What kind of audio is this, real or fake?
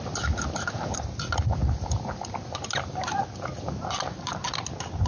real